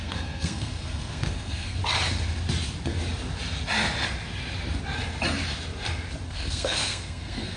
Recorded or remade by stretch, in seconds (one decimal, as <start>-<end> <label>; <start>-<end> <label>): 0.0-1.8 remade; 1.8-6.3 recorded; 6.3-7.6 remade